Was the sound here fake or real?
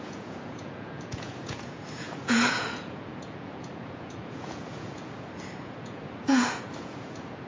fake